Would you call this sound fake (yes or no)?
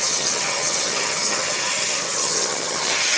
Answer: yes